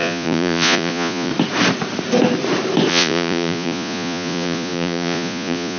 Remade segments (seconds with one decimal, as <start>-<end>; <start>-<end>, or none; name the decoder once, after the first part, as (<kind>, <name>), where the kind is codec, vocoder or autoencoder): 0.0-1.3 (vocoder, Vocos); 2.9-5.8